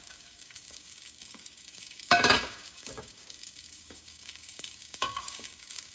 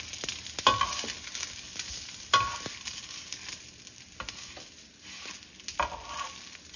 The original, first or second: second